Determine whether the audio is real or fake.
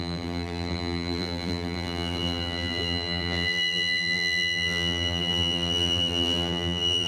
fake